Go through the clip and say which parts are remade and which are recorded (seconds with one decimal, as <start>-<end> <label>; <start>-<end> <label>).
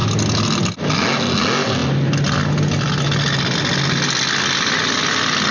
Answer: 0.0-5.5 recorded